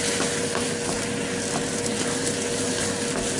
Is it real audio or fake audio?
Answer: real